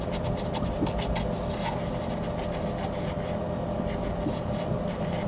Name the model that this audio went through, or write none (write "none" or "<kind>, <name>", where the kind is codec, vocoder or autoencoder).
none